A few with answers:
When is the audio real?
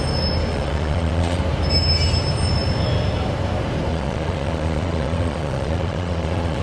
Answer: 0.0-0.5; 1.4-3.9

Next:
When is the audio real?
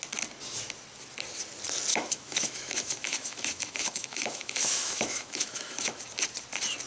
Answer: 0.0-1.9; 6.0-6.9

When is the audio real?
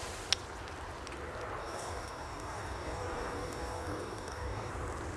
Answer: 0.0-1.6; 4.7-5.2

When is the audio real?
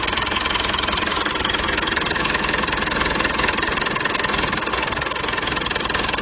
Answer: 4.7-5.2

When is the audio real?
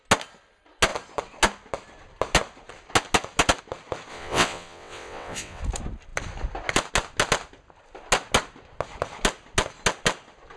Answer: 0.0-4.1; 5.6-10.6